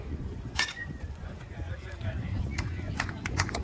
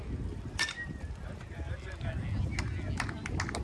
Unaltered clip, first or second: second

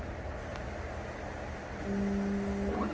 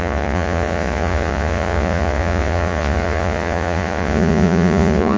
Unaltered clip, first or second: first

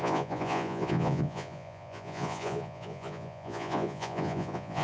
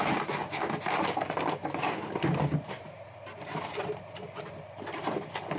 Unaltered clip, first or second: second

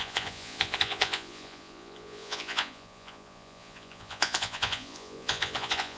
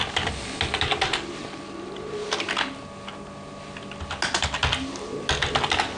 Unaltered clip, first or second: second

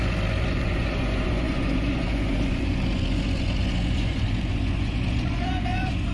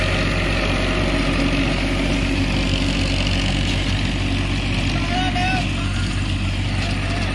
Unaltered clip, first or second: second